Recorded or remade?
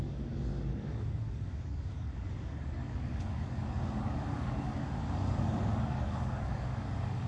remade